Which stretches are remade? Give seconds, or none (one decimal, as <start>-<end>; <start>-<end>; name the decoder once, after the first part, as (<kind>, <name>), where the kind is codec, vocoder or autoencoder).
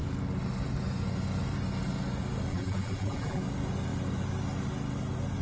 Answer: 2.5-3.4 (vocoder, BigVGAN v2)